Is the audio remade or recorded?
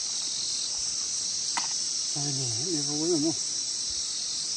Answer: recorded